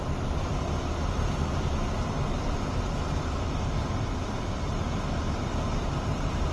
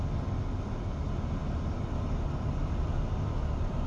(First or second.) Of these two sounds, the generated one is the first